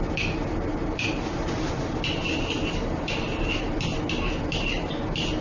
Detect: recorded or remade recorded